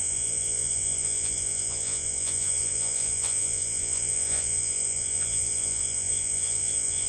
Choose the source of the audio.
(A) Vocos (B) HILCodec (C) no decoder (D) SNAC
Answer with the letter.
A